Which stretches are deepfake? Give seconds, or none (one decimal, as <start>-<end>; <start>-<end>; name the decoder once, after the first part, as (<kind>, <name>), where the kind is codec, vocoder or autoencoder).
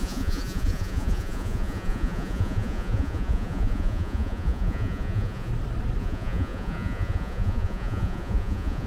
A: 0.0-5.5 (vocoder, Vocos); 6.0-8.9